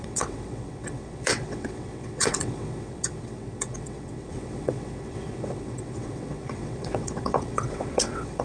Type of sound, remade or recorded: remade